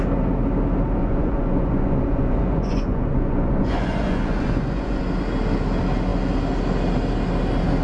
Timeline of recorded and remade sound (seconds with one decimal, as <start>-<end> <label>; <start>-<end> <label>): 0.0-1.0 recorded; 1.0-5.0 remade; 5.0-7.8 recorded

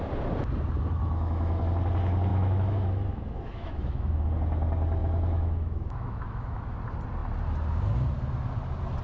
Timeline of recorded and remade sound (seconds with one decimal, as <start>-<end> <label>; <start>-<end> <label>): 0.0-1.0 recorded; 1.0-1.6 remade; 1.6-2.3 recorded; 2.3-4.3 remade; 4.3-5.0 recorded; 5.0-6.8 remade; 6.8-9.0 recorded

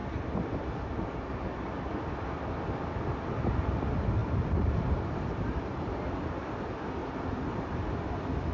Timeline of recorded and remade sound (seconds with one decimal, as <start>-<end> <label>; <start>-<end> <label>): 0.0-4.2 recorded; 4.2-5.9 remade; 5.9-7.0 recorded; 7.0-7.8 remade; 7.8-8.5 recorded

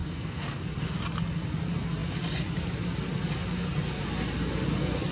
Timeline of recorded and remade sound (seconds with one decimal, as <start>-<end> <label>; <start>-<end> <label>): 0.0-0.6 remade; 0.6-5.1 recorded